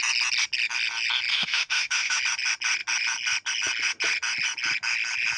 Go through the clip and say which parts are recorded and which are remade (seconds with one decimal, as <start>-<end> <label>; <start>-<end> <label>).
0.0-1.3 recorded; 1.3-2.2 remade; 2.2-5.4 recorded